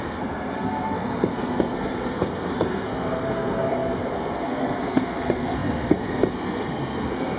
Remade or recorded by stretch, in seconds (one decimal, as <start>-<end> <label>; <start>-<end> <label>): 0.0-7.4 remade